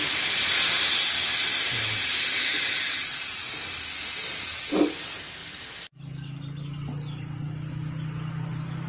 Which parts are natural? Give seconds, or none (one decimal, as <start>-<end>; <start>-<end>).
0.0-8.9

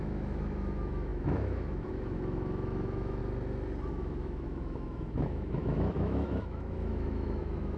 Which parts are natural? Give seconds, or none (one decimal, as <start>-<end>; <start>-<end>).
3.2-3.9

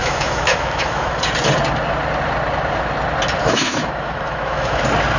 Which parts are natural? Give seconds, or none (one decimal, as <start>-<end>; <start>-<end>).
1.2-3.4; 4.8-5.2

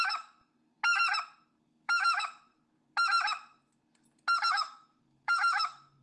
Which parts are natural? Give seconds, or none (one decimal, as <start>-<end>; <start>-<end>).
0.4-1.6; 2.5-4.5

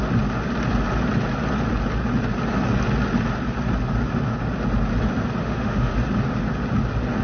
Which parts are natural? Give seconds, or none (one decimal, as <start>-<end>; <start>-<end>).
0.0-5.4; 5.9-7.2

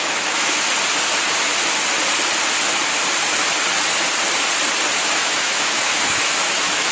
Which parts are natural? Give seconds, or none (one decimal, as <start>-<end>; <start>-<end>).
0.6-5.0

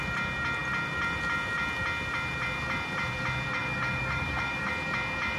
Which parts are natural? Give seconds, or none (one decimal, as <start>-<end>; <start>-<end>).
0.0-3.6; 4.7-5.4

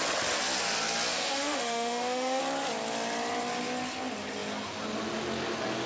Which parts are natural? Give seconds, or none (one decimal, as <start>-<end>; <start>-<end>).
0.0-1.1; 2.4-5.9